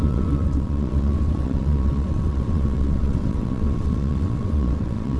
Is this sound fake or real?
fake